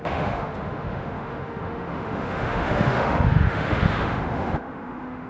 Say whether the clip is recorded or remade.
remade